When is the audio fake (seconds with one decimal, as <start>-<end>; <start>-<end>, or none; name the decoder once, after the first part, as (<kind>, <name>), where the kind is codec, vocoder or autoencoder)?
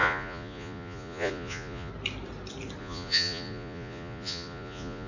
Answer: 0.0-1.9 (vocoder, Vocos); 2.8-5.1